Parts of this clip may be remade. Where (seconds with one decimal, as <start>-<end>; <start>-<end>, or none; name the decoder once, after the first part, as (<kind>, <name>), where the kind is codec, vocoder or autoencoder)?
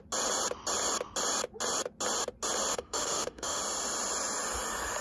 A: 2.7-3.6 (autoencoder, DAC-VAE)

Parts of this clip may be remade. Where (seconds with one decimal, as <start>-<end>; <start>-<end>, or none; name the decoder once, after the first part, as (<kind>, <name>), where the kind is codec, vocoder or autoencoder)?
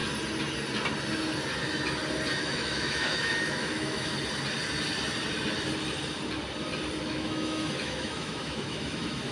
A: 2.4-4.1 (autoencoder, DAC-VAE); 7.0-9.3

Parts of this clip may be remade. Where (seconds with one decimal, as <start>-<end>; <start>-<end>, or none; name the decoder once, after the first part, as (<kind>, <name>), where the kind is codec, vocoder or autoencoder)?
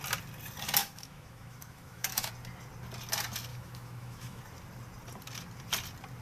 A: 0.8-2.3 (autoencoder, DAC-VAE); 3.5-4.4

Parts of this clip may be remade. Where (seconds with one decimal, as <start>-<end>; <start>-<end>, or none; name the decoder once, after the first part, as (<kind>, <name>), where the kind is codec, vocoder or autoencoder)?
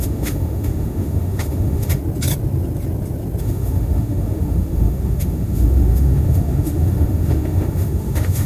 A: 0.0-2.0 (autoencoder, DAC-VAE); 3.4-8.5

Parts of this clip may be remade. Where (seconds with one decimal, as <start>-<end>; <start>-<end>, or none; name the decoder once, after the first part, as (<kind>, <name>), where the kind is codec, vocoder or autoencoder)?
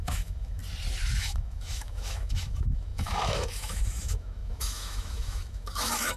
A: 0.0-0.6 (autoencoder, DAC-VAE); 1.2-6.2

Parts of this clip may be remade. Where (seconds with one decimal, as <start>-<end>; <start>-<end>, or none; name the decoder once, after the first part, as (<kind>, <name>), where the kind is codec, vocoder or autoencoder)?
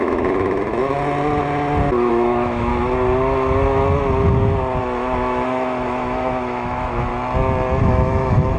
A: 0.0-0.8 (autoencoder, DAC-VAE); 2.1-2.7; 4.8-7.1; 7.8-8.6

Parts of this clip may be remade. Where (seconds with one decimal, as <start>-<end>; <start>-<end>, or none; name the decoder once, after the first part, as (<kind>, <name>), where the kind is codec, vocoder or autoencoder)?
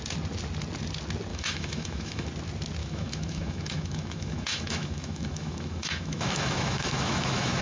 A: 1.3-2.3 (autoencoder, DAC-VAE); 2.8-7.6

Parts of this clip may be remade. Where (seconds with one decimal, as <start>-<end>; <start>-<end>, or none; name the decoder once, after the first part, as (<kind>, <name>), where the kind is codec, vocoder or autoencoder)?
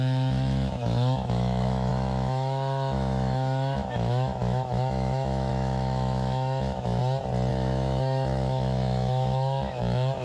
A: 0.0-7.0 (autoencoder, DAC-VAE); 7.5-10.2